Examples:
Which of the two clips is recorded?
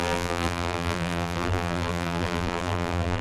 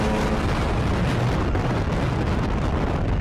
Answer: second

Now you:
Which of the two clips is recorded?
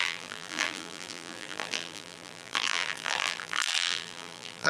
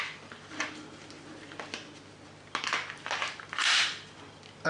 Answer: second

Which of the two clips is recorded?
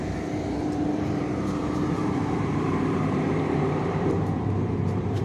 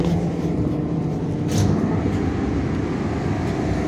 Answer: second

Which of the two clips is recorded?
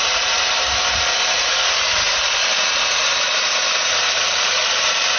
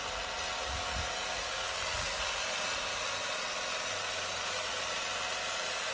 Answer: second